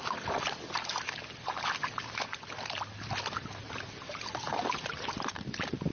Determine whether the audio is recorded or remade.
recorded